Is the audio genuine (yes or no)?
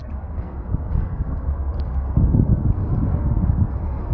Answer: no